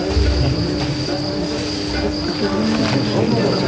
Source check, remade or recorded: recorded